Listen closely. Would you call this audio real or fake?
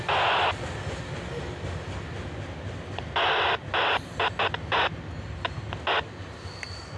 real